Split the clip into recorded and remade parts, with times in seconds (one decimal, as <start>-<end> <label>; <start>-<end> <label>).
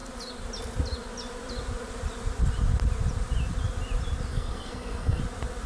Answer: 0.0-4.3 recorded; 4.3-5.2 remade; 5.2-5.7 recorded